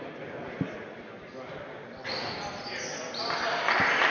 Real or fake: real